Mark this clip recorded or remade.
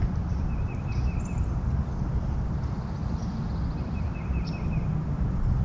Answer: recorded